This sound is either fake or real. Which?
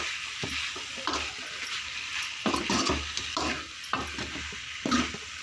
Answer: real